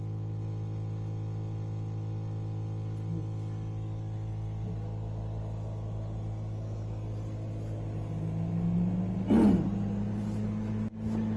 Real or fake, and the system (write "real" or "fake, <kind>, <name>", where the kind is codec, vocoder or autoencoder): real